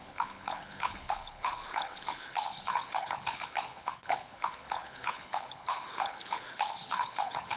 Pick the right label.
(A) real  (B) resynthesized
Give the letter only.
B